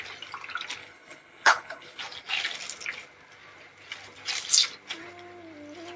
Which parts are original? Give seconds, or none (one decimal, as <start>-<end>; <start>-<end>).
0.0-0.8; 2.0-6.0